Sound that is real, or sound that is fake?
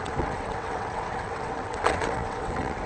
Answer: fake